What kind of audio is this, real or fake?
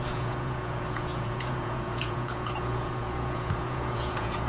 fake